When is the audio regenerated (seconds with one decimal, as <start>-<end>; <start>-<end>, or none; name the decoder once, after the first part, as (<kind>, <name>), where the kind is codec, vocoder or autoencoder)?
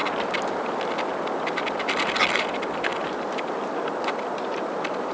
none